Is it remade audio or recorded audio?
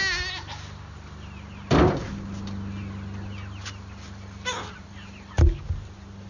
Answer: recorded